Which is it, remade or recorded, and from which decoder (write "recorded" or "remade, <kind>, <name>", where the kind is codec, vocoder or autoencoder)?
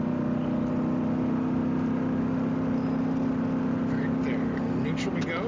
recorded